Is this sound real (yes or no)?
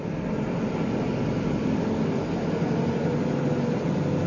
yes